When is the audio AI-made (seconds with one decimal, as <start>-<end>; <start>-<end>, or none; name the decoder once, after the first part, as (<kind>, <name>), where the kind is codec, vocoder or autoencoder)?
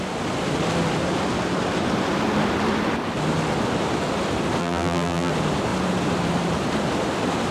4.6-5.3 (vocoder, BigVGAN v2)